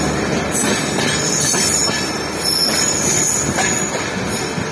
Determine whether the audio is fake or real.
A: real